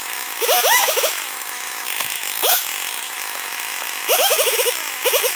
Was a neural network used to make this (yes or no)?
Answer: yes